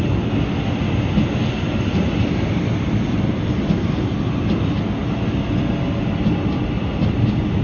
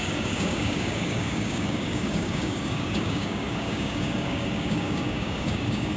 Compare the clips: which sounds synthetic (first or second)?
second